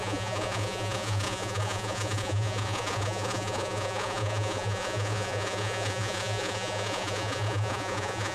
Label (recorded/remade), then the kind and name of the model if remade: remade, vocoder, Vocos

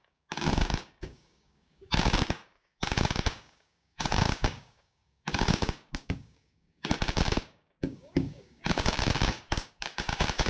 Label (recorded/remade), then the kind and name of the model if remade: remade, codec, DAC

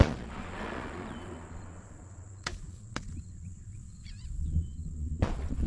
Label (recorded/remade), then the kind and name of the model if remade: remade, vocoder, Vocos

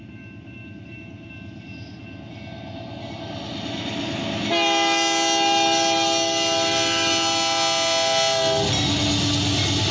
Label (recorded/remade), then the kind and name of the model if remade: recorded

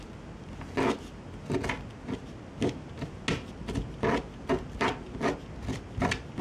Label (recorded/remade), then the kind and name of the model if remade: recorded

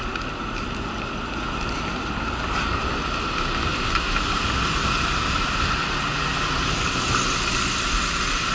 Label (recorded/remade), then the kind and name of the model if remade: recorded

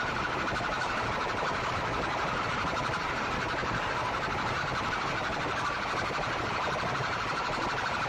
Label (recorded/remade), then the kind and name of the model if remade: remade, vocoder, BigVGAN v2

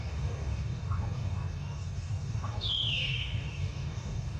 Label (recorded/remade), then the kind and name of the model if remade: remade, codec, DAC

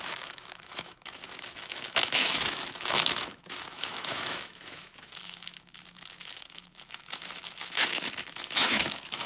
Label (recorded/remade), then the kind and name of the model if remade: remade, autoencoder, DAC-VAE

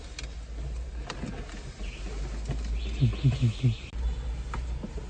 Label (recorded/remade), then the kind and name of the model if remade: recorded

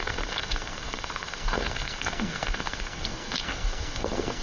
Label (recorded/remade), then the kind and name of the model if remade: remade, codec, SNAC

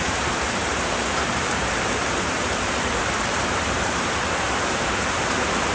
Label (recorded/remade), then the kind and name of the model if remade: remade, vocoder, BigVGAN v2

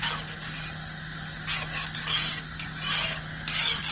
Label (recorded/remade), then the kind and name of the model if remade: recorded